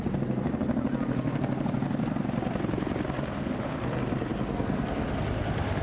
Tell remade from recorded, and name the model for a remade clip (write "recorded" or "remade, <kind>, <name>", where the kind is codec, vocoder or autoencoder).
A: recorded